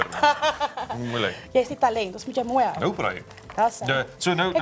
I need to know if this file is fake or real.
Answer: real